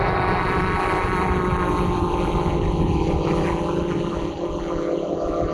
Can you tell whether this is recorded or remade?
recorded